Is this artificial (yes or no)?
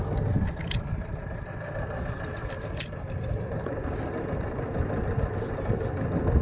no